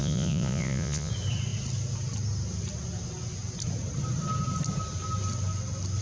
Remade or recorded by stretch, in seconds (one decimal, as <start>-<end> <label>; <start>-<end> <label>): 0.0-1.1 remade; 1.1-6.0 recorded